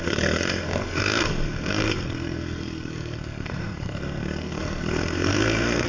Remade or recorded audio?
remade